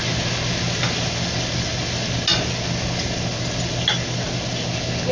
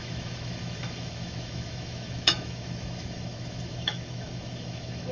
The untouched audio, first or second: first